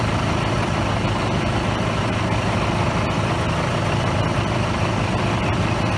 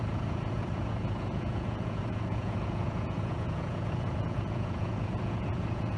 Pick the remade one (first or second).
second